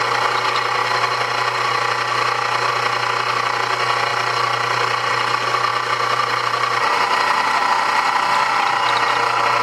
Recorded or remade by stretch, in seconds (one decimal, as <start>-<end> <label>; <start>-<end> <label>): 0.0-4.1 recorded; 4.1-5.1 remade; 5.1-5.7 recorded; 5.7-7.6 remade; 7.6-9.6 recorded